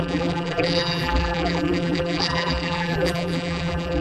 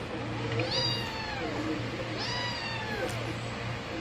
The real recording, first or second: second